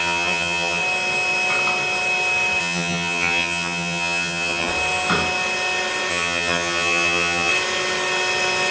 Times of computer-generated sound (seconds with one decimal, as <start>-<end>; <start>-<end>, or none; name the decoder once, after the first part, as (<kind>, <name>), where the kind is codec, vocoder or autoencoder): 0.0-0.8 (vocoder, HiFi-GAN); 2.6-4.7; 6.1-7.5